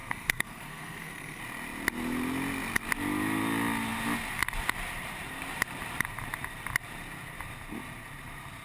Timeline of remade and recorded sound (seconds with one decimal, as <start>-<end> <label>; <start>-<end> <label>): 0.0-1.4 remade; 1.4-8.6 recorded